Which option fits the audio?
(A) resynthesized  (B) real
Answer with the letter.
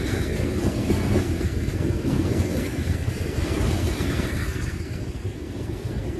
A